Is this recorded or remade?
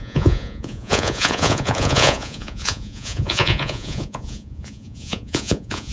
remade